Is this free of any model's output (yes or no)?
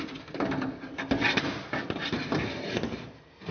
yes